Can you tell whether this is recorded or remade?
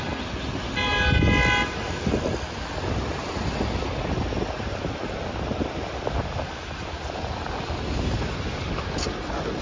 recorded